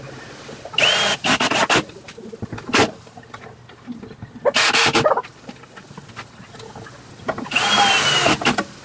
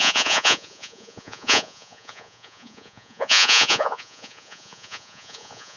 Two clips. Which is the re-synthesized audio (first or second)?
second